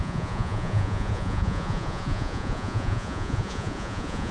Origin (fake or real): fake